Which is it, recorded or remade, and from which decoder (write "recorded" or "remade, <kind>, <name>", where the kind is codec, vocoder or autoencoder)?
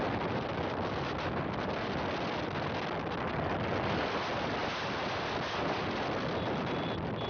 recorded